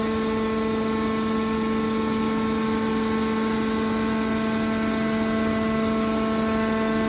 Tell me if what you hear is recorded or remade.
recorded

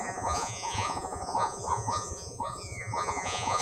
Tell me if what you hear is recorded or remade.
remade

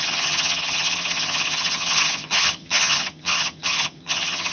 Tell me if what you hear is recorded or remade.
remade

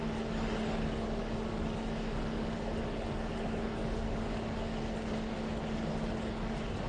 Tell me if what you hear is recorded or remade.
remade